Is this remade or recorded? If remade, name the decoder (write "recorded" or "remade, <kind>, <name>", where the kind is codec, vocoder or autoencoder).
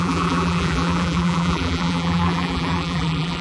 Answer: remade, vocoder, BigVGAN v2